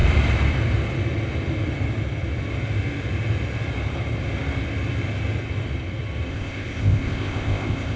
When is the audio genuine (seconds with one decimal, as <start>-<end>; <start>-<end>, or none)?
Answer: 0.0-6.3